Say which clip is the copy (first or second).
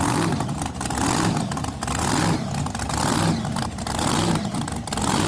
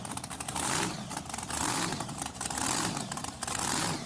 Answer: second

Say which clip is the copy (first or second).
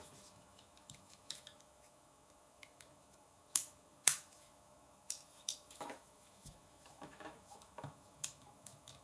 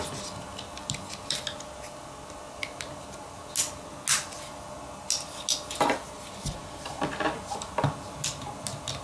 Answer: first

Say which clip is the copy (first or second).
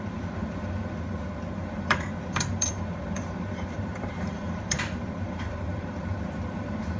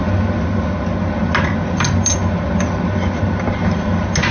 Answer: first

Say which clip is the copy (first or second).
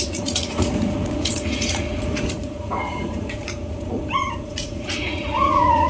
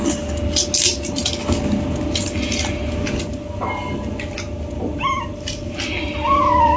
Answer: first